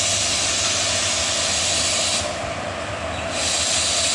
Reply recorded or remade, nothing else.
recorded